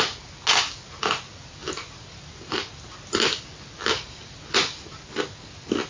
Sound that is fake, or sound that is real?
real